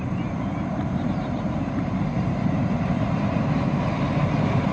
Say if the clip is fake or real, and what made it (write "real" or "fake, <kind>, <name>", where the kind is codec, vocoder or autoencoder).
fake, vocoder, BigVGAN v2